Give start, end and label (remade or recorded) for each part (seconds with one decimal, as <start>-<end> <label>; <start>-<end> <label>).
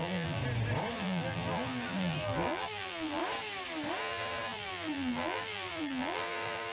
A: 0.0-0.4 remade; 0.4-0.9 recorded; 0.9-3.2 remade; 3.2-4.0 recorded; 4.0-6.7 remade